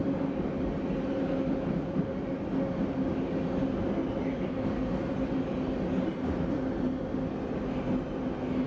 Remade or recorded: recorded